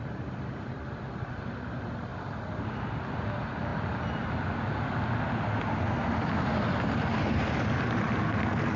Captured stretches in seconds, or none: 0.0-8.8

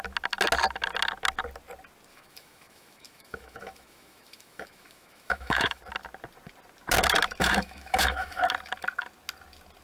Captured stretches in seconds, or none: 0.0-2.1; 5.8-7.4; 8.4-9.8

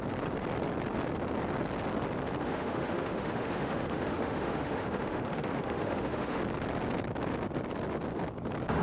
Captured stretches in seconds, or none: 0.0-2.4; 6.4-8.8

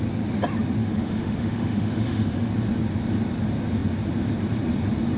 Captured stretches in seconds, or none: 0.0-0.8; 2.5-5.2

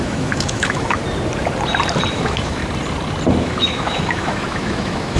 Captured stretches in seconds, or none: 1.0-2.1; 2.6-3.4